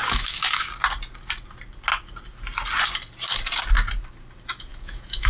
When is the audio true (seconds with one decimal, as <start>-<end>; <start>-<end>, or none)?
0.7-4.7